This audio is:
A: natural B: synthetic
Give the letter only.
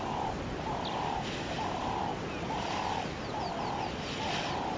A